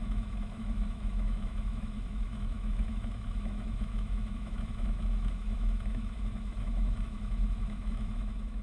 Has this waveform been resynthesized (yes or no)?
yes